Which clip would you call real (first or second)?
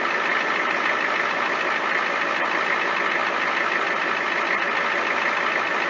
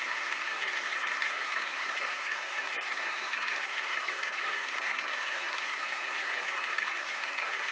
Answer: first